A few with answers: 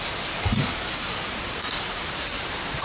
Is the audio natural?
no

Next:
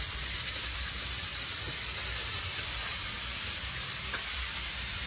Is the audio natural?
no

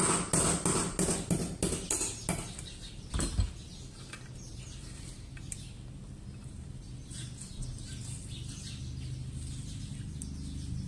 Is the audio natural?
yes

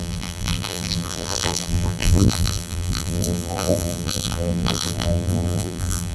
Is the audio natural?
no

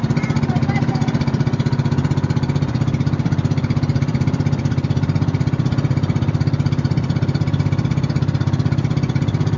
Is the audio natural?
no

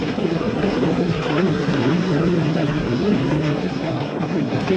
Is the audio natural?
no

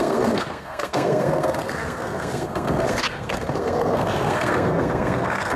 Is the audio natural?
no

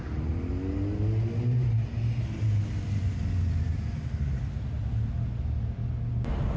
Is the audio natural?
yes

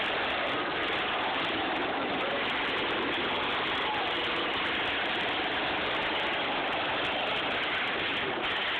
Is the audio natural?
yes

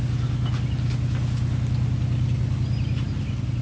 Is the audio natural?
yes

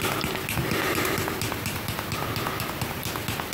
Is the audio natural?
yes